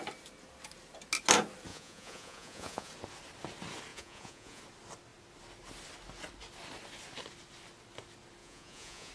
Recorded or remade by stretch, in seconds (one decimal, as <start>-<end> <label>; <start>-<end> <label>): 0.0-1.7 recorded; 1.7-2.9 remade; 2.9-3.9 recorded; 3.9-4.6 remade; 4.6-8.4 recorded; 8.4-9.1 remade